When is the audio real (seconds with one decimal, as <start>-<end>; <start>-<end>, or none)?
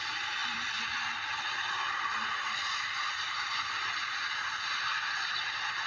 0.0-5.9